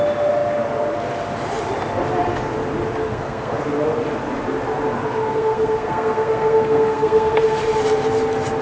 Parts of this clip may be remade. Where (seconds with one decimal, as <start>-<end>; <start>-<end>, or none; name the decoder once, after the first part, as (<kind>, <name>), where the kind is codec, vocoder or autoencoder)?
3.0-3.6 (codec, SNAC); 5.3-7.6

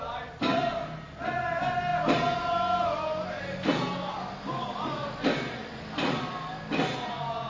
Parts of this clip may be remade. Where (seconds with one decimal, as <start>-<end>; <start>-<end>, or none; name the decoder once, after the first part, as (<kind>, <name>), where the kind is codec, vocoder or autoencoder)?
none

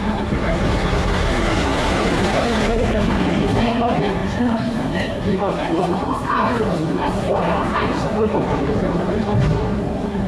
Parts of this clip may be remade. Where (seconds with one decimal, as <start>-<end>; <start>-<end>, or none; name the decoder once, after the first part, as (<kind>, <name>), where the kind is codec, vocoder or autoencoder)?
0.0-10.3 (codec, SNAC)

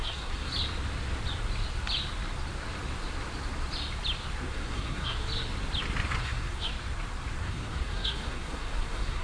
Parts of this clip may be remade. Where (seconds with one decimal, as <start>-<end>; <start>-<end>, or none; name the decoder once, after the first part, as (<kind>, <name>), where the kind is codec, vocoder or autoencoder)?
0.0-0.5 (codec, SNAC); 4.5-5.2; 6.2-6.7; 7.4-9.2

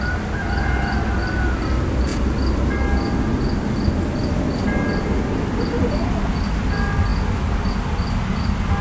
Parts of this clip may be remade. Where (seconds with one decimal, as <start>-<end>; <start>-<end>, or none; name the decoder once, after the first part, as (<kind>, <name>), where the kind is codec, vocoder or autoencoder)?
none

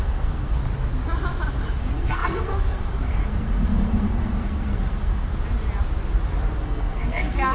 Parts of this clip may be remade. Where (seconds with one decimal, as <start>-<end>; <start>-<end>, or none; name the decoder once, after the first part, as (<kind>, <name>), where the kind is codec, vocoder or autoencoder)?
0.0-0.6 (codec, SNAC); 1.8-5.3; 6.6-7.5

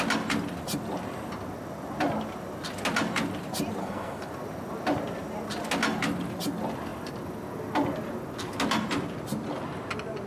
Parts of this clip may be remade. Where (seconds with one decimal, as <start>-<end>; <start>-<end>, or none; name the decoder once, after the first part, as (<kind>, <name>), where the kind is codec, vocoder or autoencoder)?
3.8-4.3 (codec, SNAC)

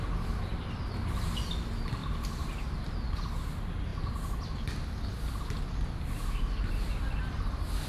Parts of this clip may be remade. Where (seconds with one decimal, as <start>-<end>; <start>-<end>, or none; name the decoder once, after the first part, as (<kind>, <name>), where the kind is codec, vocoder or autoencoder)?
none